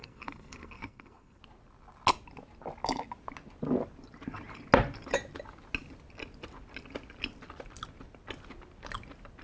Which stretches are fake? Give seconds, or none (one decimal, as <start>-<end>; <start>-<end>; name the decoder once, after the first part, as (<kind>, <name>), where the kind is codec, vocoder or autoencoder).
0.0-1.4 (codec, SNAC)